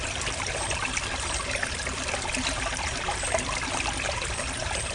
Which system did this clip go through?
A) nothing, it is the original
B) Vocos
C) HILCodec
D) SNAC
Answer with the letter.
A